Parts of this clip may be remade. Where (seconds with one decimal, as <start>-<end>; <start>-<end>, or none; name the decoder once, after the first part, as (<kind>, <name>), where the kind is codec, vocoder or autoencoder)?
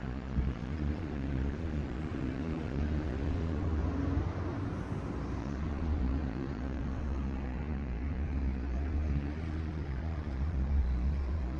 0.0-3.8 (vocoder, Vocos); 5.4-11.6